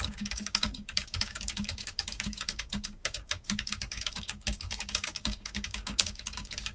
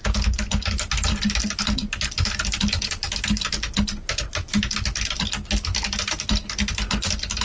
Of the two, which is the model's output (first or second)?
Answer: first